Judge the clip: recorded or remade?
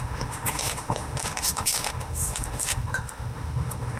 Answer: remade